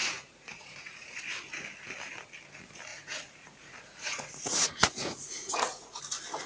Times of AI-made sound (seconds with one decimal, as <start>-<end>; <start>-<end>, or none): 0.0-1.2; 2.9-6.0

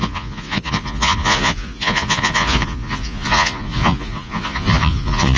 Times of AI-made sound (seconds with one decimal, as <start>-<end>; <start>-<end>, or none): 0.0-5.4

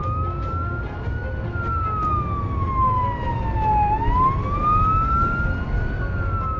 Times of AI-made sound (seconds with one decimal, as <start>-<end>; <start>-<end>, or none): none

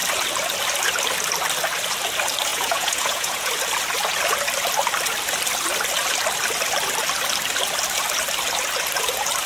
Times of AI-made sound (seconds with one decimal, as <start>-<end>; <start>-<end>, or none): 2.5-3.5

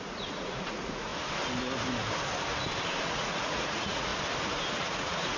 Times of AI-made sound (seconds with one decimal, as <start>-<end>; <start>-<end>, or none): 0.0-1.1; 3.1-4.1; 4.7-5.4

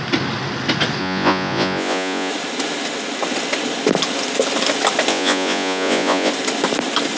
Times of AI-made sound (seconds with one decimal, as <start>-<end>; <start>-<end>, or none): 1.0-2.3; 5.1-6.3

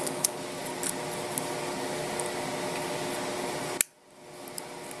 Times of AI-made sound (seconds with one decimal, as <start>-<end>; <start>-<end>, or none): none